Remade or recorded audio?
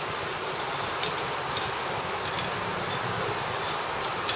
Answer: recorded